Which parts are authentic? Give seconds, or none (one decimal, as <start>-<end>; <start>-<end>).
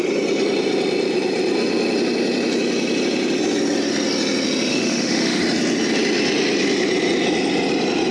0.0-4.7; 5.4-8.1